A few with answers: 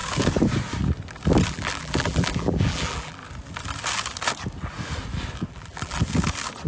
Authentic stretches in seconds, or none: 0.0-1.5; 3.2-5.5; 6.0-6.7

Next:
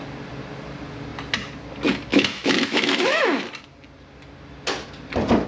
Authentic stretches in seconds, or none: 0.0-2.1; 3.4-5.5